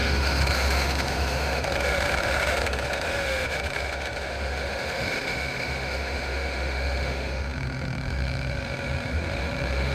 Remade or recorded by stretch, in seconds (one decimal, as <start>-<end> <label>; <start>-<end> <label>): 0.0-9.9 remade